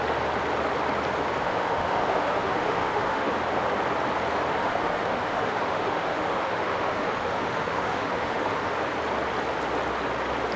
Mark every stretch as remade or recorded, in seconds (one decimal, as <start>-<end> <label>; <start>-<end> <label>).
0.0-1.4 recorded; 1.4-3.3 remade; 3.3-4.6 recorded; 4.6-8.7 remade; 8.7-10.6 recorded